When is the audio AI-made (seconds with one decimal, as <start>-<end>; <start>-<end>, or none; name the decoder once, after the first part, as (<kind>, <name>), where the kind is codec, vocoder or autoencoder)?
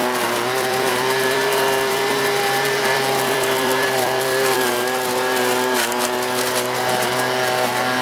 0.0-4.7 (vocoder, BigVGAN v2)